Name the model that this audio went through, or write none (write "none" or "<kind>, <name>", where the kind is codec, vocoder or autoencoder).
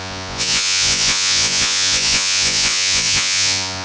vocoder, Vocos